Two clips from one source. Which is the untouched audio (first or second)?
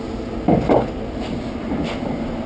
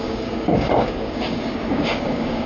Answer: first